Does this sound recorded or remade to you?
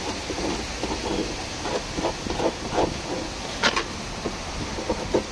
recorded